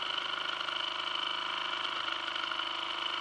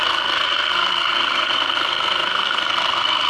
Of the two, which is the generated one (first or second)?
second